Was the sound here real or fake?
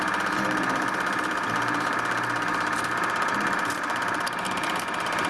fake